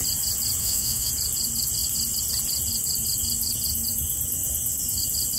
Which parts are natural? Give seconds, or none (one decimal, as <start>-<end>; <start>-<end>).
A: 0.0-0.6; 1.1-5.4